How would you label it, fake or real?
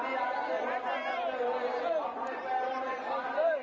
real